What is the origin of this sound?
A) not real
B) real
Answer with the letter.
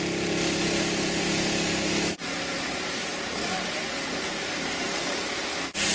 A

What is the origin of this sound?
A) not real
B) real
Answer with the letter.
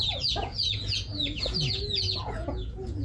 A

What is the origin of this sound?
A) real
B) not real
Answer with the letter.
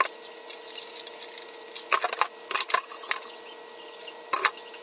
A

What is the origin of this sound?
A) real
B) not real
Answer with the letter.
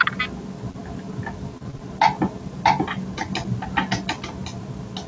A